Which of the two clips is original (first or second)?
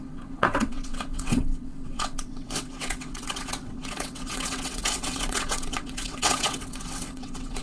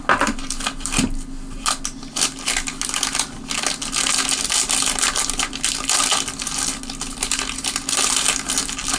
second